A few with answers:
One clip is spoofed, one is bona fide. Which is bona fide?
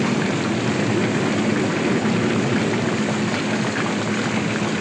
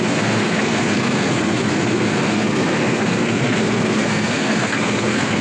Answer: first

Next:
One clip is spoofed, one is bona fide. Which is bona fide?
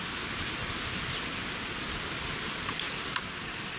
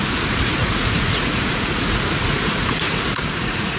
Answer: first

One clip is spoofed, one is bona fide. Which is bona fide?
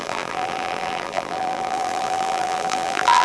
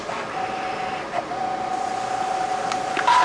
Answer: second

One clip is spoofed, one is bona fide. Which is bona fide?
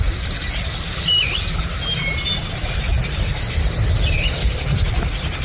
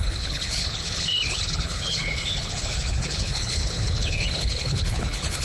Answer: first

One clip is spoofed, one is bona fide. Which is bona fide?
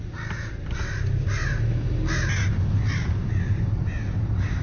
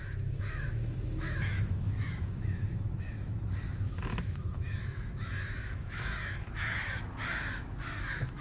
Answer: first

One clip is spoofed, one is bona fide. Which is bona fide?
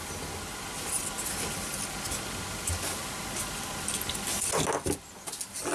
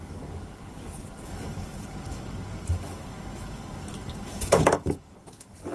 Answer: first